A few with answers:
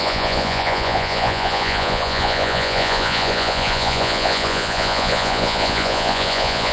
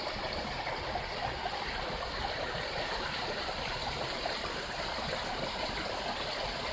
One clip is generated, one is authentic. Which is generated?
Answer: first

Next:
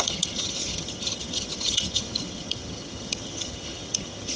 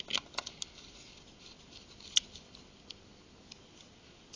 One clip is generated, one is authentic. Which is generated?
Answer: first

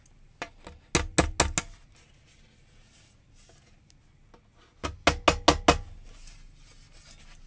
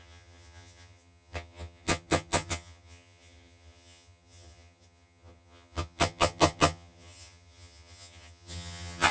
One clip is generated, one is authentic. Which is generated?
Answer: second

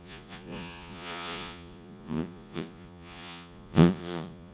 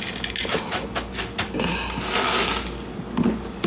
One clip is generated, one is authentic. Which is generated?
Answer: first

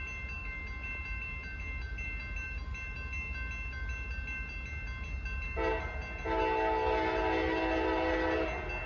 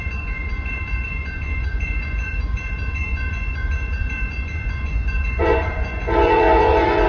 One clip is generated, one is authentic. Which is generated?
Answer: second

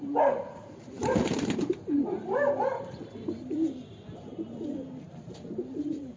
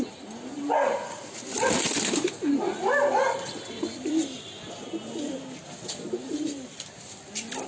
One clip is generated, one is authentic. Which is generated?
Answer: first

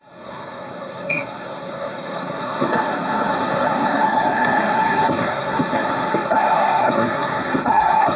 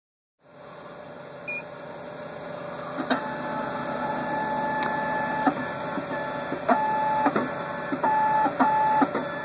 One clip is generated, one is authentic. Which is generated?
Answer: first